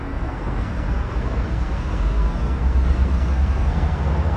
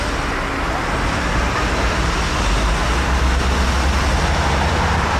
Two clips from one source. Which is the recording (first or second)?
second